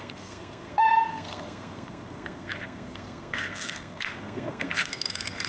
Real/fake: fake